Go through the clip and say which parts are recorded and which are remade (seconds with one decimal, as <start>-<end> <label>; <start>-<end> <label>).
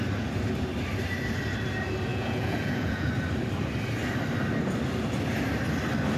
0.0-2.1 recorded; 2.1-3.1 remade; 3.1-6.2 recorded